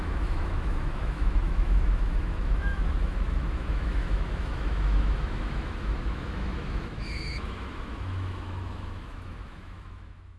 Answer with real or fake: fake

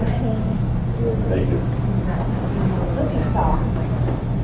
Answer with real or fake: real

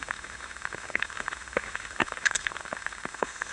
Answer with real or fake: fake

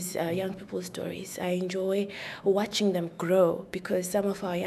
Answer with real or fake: fake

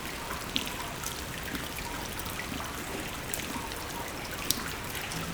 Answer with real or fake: real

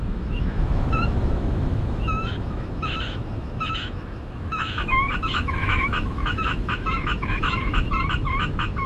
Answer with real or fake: fake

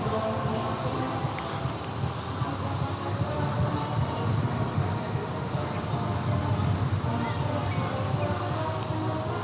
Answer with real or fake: real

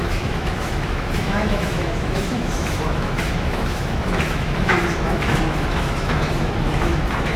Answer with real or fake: fake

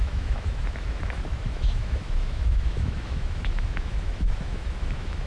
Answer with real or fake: fake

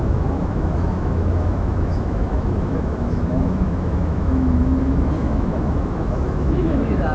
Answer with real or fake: fake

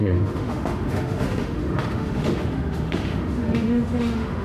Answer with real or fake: fake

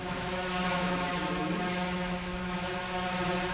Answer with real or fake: fake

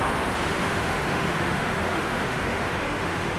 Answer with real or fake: fake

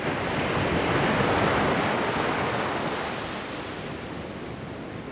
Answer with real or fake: real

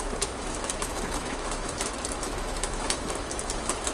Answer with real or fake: fake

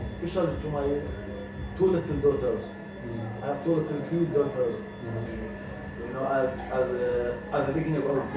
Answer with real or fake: real